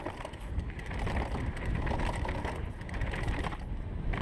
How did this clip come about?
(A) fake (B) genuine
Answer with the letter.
B